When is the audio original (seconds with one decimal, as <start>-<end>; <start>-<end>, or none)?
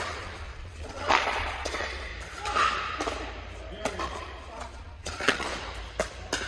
2.1-4.0; 5.5-6.5